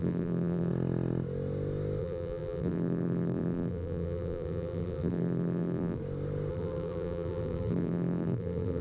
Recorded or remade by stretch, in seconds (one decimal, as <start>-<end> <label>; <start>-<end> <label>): 0.0-0.7 remade; 0.7-2.0 recorded; 2.0-6.0 remade; 6.0-6.5 recorded; 6.5-8.8 remade